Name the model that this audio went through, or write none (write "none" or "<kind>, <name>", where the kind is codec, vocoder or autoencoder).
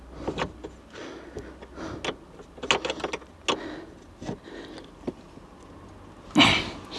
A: none